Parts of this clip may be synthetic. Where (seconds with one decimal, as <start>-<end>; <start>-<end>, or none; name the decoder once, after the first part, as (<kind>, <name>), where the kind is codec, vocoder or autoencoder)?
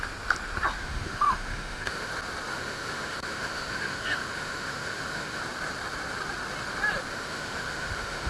0.8-2.1 (autoencoder, DAC-VAE); 2.5-5.4; 7.1-8.3